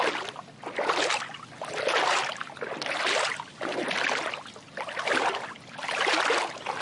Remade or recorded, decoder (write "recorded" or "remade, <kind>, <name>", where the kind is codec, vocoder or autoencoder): recorded